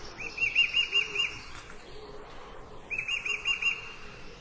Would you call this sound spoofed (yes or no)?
no